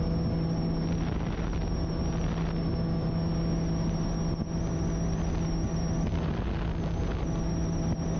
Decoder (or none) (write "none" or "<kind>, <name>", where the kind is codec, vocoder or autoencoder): none